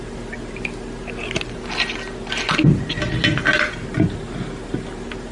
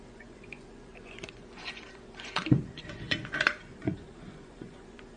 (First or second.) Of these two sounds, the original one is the first